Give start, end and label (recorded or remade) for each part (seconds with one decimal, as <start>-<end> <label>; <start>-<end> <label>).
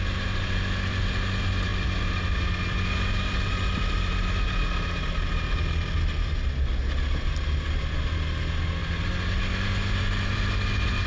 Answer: 0.0-11.1 recorded